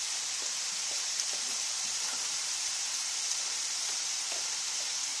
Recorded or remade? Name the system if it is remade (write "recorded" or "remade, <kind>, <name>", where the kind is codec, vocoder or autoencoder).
remade, vocoder, BigVGAN v2